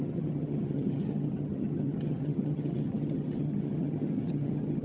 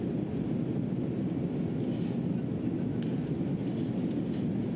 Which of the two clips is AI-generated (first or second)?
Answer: first